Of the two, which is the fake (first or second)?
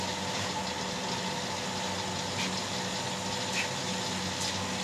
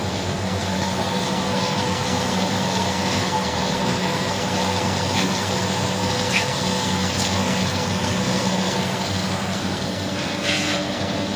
second